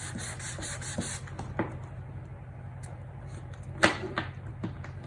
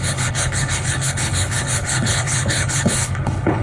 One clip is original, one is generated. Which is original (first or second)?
first